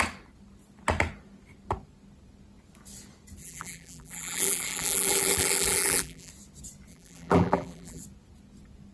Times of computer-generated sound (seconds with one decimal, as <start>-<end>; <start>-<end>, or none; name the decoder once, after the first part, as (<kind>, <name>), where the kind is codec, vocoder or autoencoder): 3.4-6.3 (vocoder, BigVGAN v2); 6.9-8.0